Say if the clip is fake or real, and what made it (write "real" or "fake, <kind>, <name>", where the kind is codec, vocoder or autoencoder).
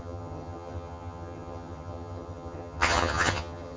fake, vocoder, HiFi-GAN